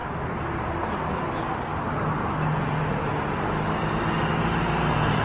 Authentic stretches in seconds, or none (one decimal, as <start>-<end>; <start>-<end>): 0.0-5.2